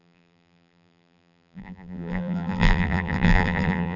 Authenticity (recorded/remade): remade